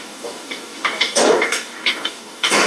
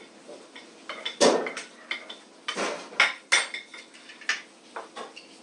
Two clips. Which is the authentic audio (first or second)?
second